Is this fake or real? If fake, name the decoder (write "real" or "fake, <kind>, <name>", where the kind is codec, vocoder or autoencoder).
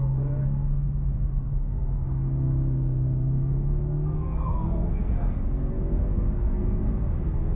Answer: fake, codec, SNAC